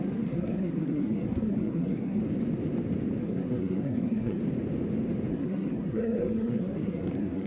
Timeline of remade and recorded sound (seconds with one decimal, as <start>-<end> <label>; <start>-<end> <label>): 0.0-2.2 remade; 2.2-3.2 recorded; 3.2-4.4 remade; 4.4-5.3 recorded; 5.3-7.5 remade